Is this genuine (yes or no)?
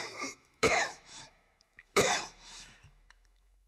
no